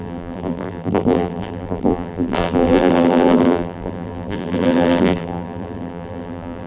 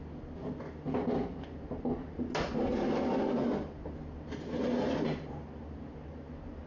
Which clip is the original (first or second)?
second